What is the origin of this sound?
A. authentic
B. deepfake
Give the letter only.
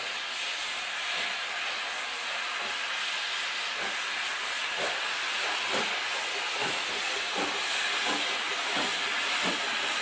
A